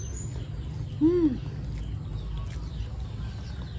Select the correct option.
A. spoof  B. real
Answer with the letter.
B